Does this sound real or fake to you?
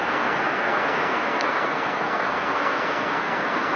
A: fake